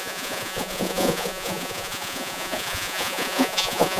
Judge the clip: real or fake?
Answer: fake